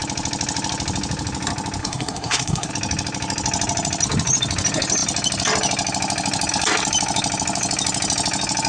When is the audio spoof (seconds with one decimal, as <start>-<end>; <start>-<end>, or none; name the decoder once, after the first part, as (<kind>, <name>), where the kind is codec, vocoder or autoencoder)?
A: 1.8-2.7 (codec, SNAC)